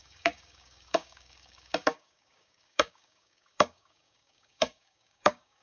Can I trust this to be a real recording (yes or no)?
no